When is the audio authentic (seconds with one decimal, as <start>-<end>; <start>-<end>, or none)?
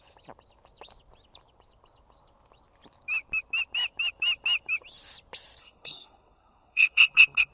0.0-5.6